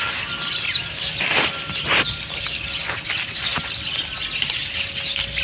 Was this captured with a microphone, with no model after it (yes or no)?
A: yes